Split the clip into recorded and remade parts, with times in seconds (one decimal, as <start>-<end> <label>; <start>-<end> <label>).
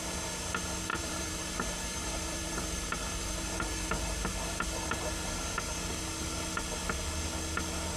0.0-0.9 recorded; 0.9-5.6 remade; 5.6-8.0 recorded